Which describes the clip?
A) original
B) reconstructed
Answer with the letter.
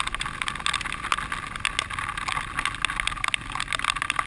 A